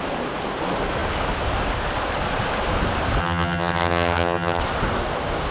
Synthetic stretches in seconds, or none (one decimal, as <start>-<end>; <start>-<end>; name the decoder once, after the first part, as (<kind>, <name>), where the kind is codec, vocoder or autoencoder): 3.2-4.6 (vocoder, HiFi-GAN)